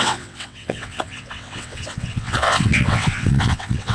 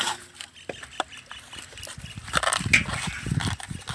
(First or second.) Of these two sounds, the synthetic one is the first